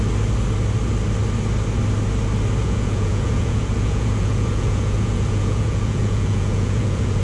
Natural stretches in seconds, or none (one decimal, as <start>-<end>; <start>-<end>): 0.0-2.6